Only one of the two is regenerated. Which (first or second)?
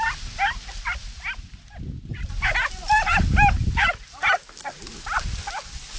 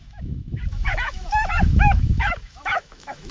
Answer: second